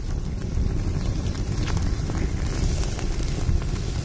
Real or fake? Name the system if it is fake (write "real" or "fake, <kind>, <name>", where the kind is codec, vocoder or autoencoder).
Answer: real